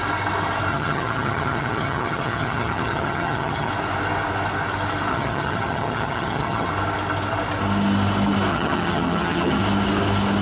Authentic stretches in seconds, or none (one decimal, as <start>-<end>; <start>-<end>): 0.0-0.7; 3.7-5.1; 6.7-8.5; 9.6-10.4